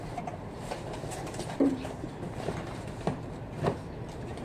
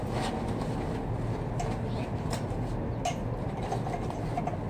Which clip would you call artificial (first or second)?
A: first